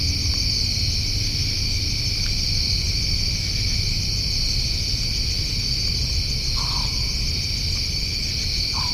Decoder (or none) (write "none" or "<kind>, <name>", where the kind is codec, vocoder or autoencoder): none